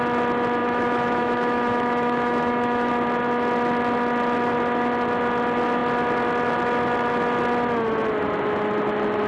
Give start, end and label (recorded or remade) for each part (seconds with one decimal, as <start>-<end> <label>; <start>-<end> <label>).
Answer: 0.0-0.6 recorded; 0.6-2.9 remade; 2.9-9.3 recorded